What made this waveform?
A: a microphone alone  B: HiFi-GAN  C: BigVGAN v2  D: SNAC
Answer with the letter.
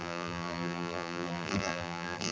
C